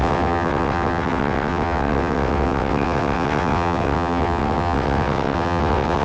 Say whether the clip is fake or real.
fake